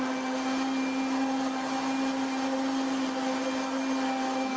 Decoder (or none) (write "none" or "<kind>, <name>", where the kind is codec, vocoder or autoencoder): none